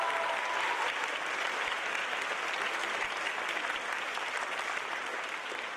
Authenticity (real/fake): real